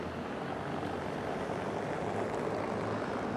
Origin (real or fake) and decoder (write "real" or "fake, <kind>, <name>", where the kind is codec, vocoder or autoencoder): real